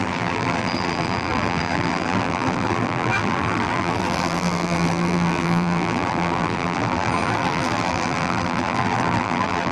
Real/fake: fake